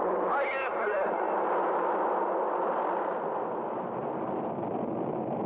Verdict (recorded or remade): recorded